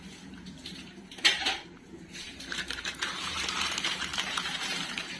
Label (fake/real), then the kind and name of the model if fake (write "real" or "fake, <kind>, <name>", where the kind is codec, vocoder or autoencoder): fake, vocoder, BigVGAN v2